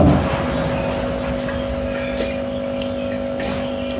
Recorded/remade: recorded